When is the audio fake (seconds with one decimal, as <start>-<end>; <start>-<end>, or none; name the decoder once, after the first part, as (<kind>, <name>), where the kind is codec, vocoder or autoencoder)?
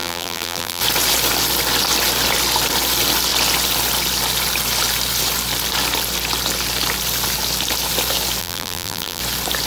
0.0-0.8 (vocoder, BigVGAN v2); 8.4-9.2